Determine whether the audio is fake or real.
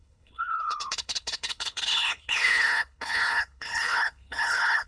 fake